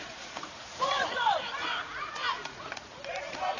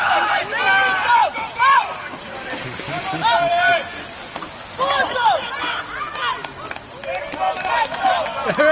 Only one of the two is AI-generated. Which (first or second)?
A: first